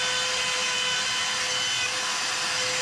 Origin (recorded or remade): recorded